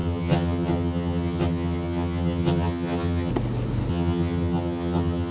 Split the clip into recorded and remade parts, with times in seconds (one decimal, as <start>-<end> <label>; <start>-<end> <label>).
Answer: 0.0-3.3 remade; 3.3-3.9 recorded; 3.9-5.3 remade